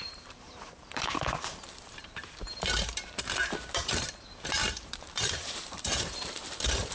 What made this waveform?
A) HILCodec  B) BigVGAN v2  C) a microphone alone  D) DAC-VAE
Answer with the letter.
B